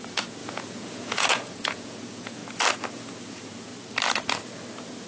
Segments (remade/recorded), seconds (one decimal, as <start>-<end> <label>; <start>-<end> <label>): 0.0-2.4 remade; 2.4-2.9 recorded; 2.9-3.7 remade; 3.7-5.1 recorded